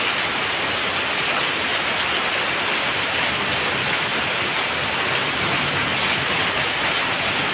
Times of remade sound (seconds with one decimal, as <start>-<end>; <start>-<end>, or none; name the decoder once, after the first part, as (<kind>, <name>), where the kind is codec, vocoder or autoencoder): none